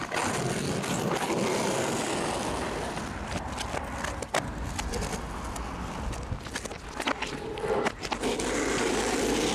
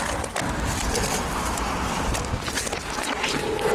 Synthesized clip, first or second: second